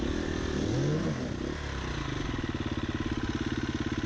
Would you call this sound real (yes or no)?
yes